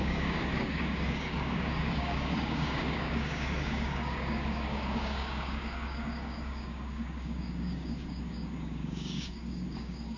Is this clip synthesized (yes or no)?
yes